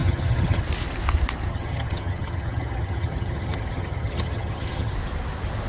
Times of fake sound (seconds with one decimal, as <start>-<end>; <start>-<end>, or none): 0.0-0.6; 1.5-4.9